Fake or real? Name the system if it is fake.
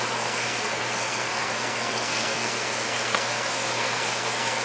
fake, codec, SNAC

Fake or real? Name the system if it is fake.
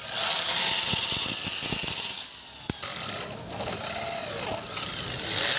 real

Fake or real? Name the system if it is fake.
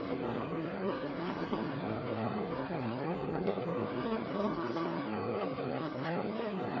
fake, codec, SNAC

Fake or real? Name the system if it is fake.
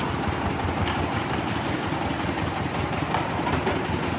real